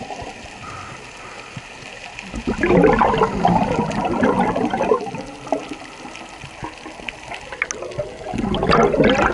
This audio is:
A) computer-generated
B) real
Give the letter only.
B